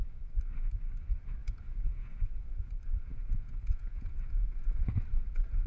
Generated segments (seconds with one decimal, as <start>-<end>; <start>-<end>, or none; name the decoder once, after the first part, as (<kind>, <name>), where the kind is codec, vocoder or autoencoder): 1.4-2.7 (vocoder, Vocos); 3.1-5.7